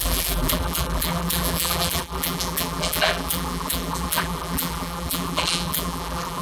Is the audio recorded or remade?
remade